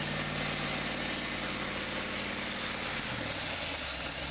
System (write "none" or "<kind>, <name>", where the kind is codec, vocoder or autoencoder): none